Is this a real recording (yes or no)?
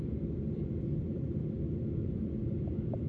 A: no